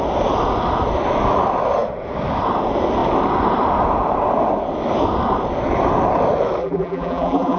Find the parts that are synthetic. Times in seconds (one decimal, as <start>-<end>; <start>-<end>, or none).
6.6-7.6